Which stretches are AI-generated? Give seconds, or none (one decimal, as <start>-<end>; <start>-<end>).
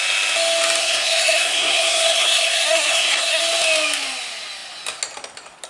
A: 0.8-3.4